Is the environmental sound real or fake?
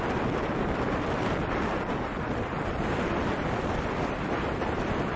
real